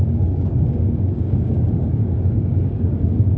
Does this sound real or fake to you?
fake